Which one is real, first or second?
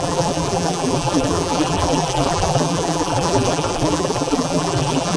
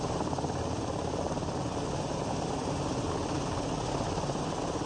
second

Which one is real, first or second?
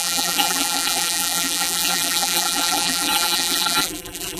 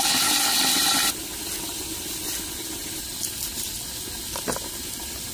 second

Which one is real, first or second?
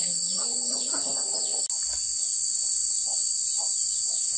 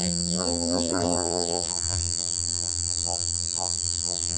first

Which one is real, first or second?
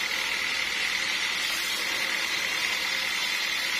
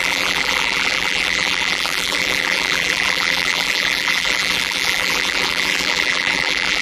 first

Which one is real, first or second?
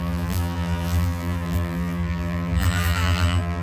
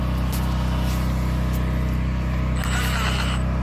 second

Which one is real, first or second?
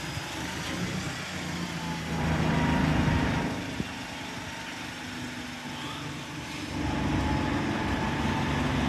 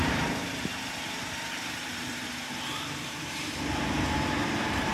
first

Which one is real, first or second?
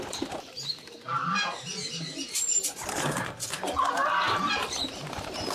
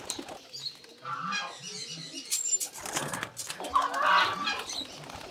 second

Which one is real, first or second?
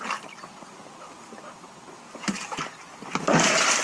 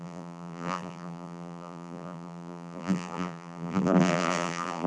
first